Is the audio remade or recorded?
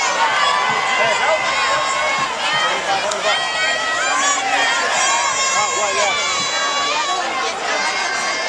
recorded